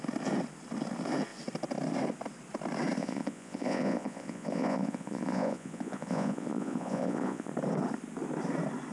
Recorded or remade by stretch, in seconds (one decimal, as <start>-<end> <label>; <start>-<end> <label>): 0.0-3.0 recorded; 3.0-7.5 remade; 7.5-8.9 recorded